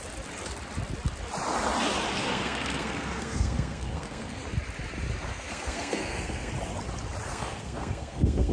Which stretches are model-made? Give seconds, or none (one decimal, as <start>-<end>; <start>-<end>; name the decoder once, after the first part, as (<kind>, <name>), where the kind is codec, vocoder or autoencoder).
2.2-4.4 (codec, SNAC); 5.3-6.5; 7.3-8.5

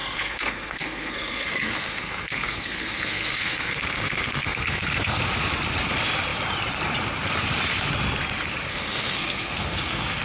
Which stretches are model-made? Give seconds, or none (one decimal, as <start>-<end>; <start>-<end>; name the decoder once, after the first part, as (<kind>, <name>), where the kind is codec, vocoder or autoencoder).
0.0-5.2 (codec, SNAC); 8.7-10.2

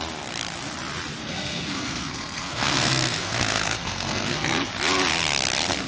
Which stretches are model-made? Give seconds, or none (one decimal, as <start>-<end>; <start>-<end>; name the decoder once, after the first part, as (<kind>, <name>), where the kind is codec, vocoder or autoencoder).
1.2-4.7 (codec, SNAC)

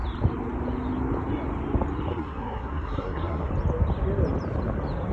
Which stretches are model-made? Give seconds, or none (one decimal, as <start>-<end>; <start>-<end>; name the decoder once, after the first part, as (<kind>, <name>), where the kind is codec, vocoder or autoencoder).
2.1-3.5 (codec, SNAC)

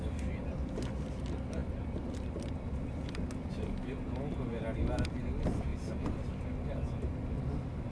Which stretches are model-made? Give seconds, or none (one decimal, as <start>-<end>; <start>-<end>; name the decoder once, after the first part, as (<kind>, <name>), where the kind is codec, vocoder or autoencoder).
none

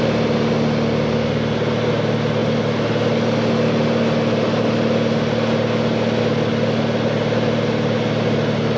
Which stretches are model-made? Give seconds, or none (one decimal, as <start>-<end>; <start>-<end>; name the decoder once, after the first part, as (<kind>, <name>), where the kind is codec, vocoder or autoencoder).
none